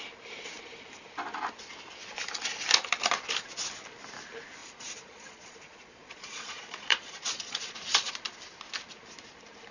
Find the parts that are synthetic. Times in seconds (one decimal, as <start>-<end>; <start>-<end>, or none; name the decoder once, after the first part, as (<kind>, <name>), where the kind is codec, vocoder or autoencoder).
4.6-8.1 (vocoder, Vocos)